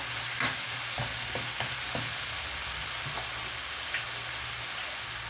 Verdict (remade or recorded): recorded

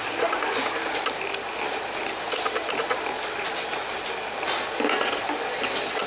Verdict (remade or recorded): recorded